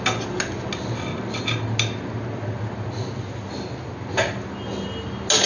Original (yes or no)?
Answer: yes